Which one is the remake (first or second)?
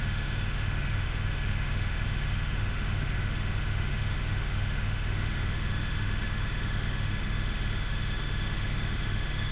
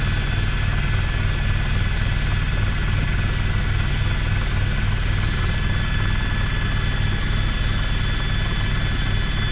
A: first